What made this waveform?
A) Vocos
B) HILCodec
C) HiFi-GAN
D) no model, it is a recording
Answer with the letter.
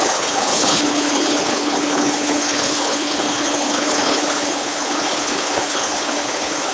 B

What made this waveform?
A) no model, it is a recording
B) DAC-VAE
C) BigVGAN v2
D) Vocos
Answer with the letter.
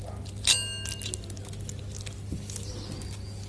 A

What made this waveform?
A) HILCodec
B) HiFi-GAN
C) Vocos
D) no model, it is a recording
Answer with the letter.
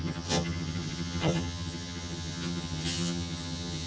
B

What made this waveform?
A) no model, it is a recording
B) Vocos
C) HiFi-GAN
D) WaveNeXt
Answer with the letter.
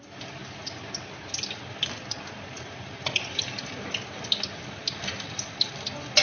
A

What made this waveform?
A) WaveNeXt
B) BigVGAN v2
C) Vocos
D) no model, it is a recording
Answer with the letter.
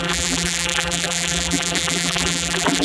B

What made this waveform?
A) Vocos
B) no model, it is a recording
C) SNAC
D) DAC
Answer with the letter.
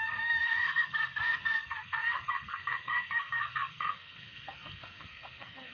C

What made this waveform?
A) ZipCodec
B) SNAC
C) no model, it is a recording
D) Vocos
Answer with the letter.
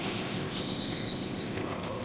A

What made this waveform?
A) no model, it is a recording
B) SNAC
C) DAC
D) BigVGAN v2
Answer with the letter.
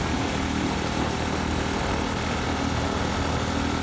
A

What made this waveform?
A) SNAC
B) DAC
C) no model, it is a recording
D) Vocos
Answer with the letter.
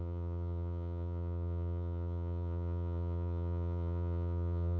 D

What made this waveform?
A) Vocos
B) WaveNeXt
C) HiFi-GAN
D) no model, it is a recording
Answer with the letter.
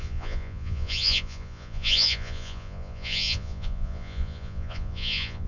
A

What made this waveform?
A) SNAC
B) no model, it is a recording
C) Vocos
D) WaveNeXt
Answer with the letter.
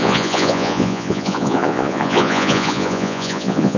C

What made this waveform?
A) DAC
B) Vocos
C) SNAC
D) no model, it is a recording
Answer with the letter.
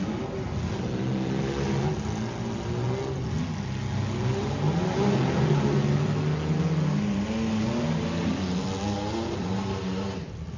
D